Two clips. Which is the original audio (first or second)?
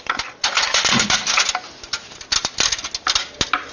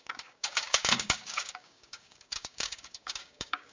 first